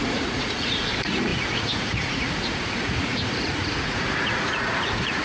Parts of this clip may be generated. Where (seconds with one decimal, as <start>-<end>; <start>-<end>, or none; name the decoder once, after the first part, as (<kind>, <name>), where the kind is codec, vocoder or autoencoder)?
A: 0.0-5.2 (vocoder, Vocos)